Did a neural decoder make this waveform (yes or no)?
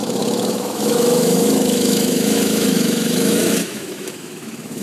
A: yes